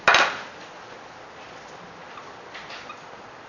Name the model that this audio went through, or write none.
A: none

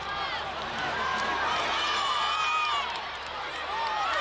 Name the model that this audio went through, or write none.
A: vocoder, BigVGAN v2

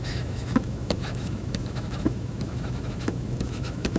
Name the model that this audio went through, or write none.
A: autoencoder, DAC-VAE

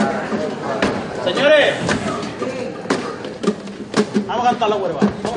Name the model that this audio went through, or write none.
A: none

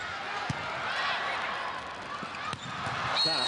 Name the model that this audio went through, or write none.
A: none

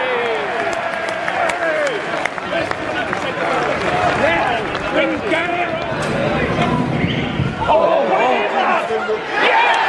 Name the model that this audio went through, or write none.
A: none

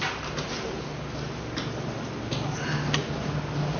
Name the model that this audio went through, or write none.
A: none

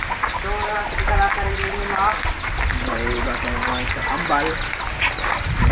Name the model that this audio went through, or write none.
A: none